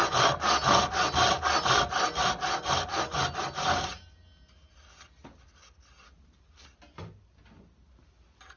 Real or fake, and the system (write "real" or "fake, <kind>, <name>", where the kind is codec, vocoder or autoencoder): real